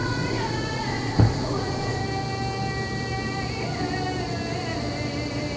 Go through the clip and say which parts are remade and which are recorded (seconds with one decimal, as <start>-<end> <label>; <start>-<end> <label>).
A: 0.0-2.0 remade; 2.0-5.6 recorded